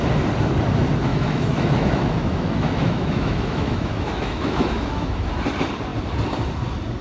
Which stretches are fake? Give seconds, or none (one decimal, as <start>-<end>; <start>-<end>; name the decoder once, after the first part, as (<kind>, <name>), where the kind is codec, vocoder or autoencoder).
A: 1.1-5.3 (autoencoder, DAC-VAE)